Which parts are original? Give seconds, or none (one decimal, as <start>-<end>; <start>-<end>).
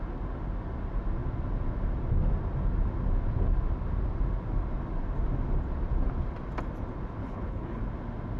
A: 0.0-7.2; 7.8-8.4